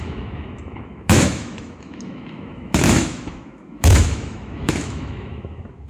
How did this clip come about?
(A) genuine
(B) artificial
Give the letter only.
B